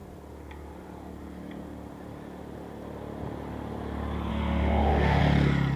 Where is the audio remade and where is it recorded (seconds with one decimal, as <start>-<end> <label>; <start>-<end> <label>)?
0.0-4.3 recorded; 4.3-5.2 remade; 5.2-5.8 recorded